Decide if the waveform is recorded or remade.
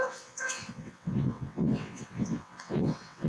remade